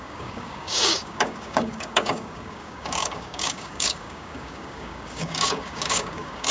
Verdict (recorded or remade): remade